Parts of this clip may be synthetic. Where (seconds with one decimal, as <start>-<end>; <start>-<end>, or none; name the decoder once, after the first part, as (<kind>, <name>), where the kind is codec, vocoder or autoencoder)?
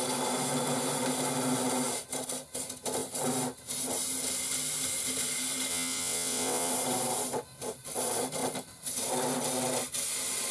5.7-6.7 (vocoder, WaveNeXt)